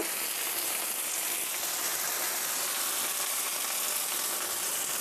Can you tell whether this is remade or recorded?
recorded